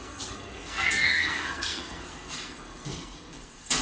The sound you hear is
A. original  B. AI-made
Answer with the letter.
B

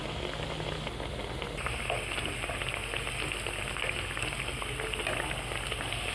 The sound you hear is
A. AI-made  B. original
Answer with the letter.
B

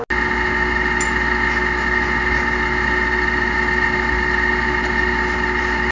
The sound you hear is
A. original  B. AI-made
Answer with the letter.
A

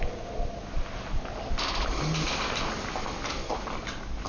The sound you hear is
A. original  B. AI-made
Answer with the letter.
A